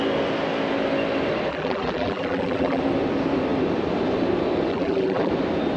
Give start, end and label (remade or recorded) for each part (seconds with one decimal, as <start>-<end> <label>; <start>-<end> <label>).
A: 0.0-1.5 recorded; 1.5-2.8 remade; 2.8-4.7 recorded; 4.7-5.3 remade; 5.3-5.8 recorded